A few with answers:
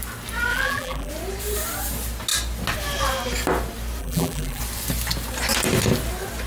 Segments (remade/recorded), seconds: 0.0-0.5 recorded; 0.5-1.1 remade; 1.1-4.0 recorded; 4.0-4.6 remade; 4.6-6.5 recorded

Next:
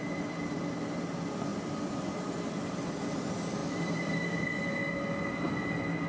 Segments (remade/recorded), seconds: 0.0-1.5 recorded; 1.5-2.4 remade; 2.4-3.6 recorded; 3.6-4.7 remade; 4.7-6.1 recorded

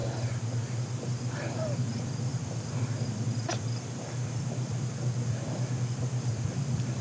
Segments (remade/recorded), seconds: 0.0-7.0 remade